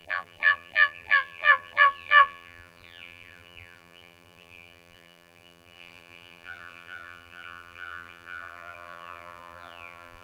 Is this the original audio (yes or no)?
no